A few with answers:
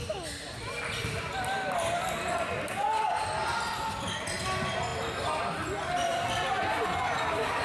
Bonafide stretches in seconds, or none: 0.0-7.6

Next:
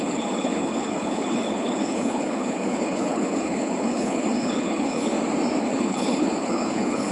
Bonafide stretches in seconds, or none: 5.1-5.6